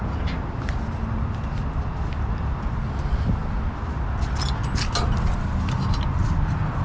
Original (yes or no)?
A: yes